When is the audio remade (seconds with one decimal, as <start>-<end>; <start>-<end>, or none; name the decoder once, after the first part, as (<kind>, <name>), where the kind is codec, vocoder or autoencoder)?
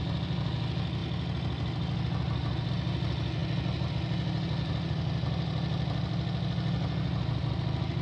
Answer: none